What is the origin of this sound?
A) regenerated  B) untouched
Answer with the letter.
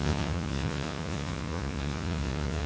A